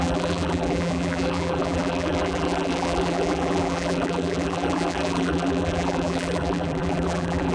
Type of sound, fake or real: fake